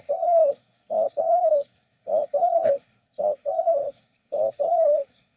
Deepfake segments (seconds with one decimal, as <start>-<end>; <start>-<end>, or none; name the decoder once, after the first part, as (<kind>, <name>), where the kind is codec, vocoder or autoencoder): 0.0-5.4 (codec, SNAC)